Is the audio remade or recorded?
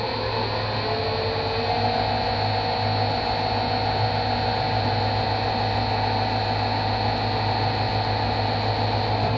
recorded